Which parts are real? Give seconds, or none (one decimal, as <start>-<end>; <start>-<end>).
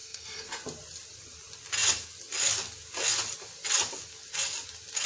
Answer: 0.5-5.1